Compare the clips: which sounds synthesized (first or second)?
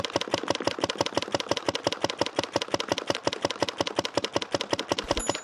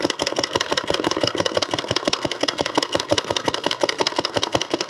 second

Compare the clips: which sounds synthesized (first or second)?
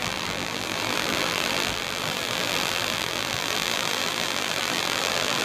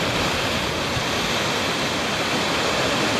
first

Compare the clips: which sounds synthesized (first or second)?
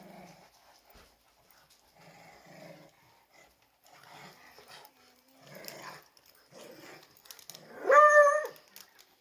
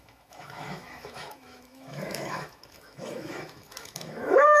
second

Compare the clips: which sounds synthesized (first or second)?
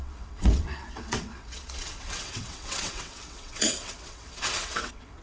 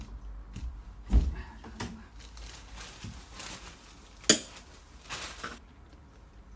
first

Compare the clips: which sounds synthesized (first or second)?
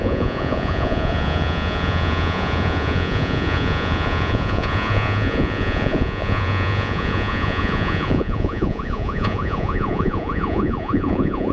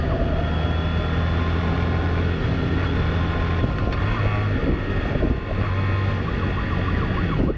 first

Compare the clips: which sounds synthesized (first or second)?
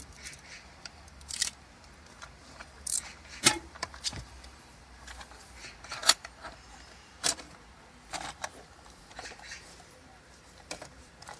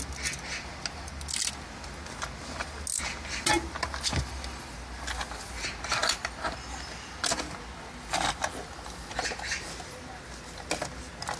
first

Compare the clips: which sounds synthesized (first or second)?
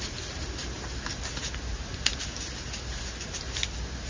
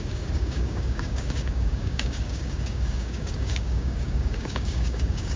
second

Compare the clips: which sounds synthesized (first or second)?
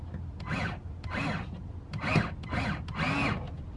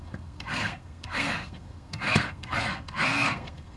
second